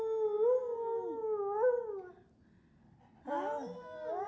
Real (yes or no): yes